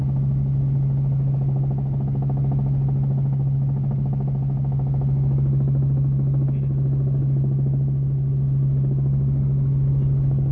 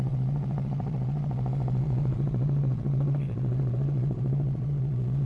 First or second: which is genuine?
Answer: first